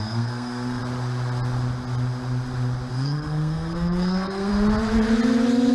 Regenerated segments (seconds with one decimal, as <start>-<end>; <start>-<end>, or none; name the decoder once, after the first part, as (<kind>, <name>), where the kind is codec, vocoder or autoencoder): 0.0-0.8 (codec, SNAC); 2.9-4.5